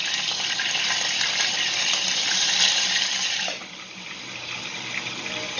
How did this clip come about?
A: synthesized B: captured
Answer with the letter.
B